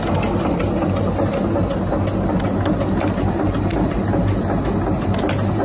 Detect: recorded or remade recorded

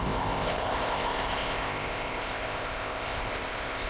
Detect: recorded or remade remade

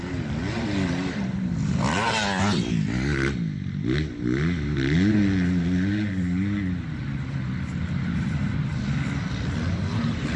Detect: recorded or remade recorded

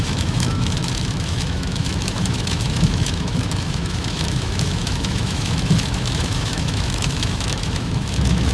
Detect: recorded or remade remade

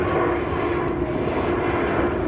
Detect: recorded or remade recorded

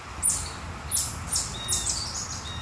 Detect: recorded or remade recorded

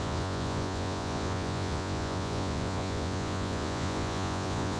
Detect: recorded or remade remade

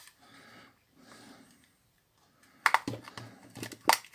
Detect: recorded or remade recorded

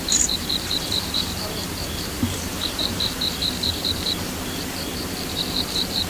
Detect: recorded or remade remade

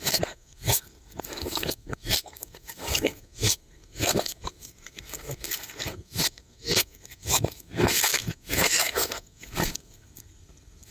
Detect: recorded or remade remade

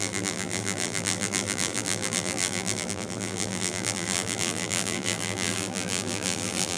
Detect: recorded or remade remade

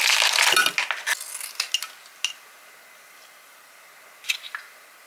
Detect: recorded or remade recorded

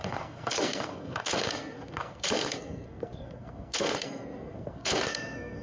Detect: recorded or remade remade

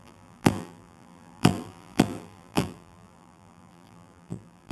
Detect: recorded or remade remade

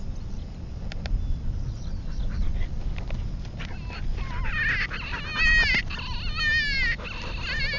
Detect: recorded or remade recorded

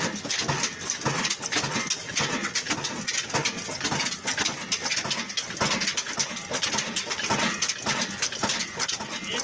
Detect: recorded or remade recorded